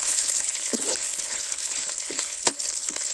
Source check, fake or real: fake